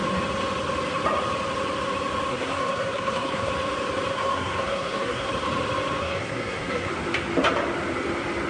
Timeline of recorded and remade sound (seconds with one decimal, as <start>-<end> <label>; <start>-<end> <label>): 0.0-2.3 recorded; 2.3-3.5 remade; 3.5-4.1 recorded; 4.1-5.3 remade; 5.3-6.0 recorded; 6.0-6.9 remade; 6.9-8.5 recorded